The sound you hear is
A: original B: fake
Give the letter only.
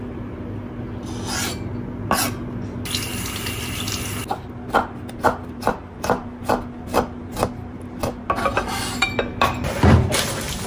A